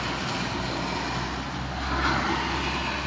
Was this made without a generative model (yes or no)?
yes